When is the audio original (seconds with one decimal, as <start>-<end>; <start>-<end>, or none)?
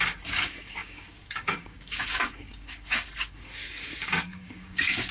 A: none